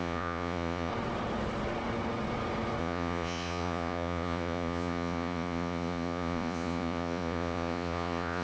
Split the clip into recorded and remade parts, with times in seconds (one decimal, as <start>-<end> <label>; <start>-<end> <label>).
0.0-0.9 remade; 0.9-2.8 recorded; 2.8-8.4 remade